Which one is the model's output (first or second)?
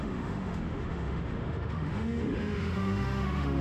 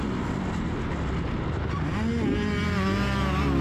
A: first